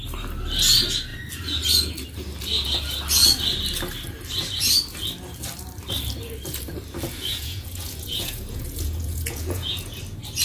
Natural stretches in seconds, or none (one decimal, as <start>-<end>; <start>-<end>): 0.0-7.3; 10.0-10.4